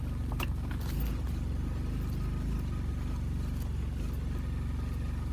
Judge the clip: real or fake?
real